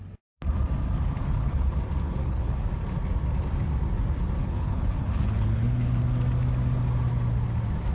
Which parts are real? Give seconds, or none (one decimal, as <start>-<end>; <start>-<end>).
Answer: 0.0-1.2; 1.8-2.2; 2.7-4.4; 6.0-7.9